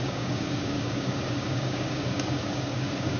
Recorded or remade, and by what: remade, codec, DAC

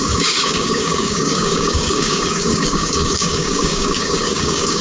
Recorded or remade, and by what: remade, codec, DAC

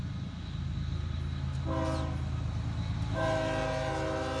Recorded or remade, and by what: recorded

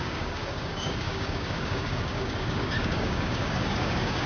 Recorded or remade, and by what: remade, codec, DAC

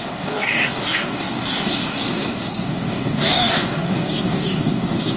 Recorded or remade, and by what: remade, codec, DAC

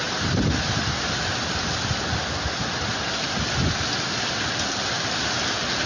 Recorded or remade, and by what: recorded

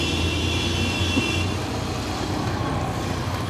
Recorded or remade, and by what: recorded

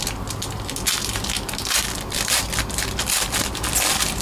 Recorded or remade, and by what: recorded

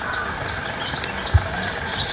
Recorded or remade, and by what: recorded